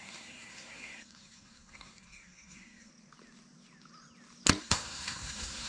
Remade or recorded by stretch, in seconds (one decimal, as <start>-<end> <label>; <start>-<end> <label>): 0.0-2.9 remade; 2.9-4.6 recorded; 4.6-5.7 remade